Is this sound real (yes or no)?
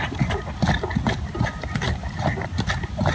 no